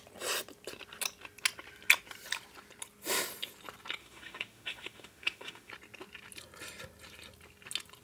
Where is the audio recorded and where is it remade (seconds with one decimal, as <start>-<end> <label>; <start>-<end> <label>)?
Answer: 0.0-4.0 recorded; 4.0-5.7 remade; 5.7-8.0 recorded